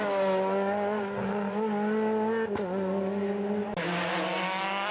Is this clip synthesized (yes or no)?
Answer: no